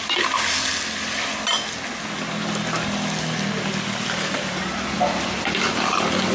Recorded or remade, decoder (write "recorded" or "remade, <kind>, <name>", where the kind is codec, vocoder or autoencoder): recorded